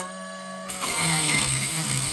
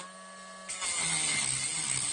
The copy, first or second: first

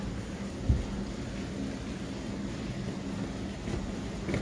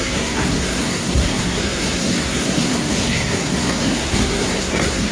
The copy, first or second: second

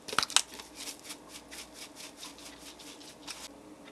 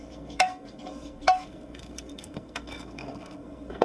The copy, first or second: second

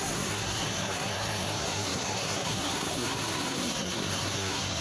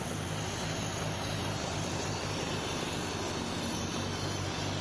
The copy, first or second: first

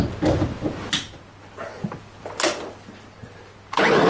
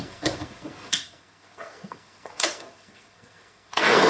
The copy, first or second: second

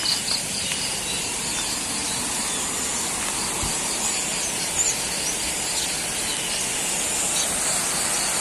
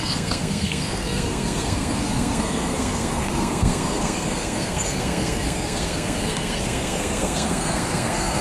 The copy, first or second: second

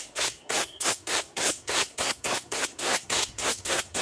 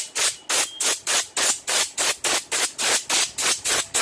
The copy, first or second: first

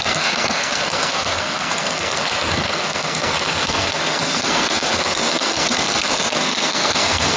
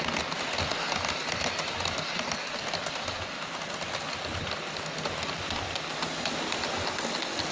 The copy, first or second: first